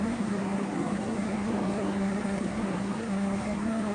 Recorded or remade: remade